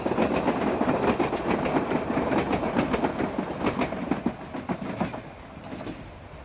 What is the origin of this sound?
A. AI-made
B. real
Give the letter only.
B